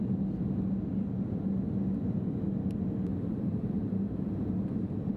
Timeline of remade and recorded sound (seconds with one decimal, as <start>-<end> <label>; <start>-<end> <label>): 0.0-3.1 recorded; 3.1-5.2 remade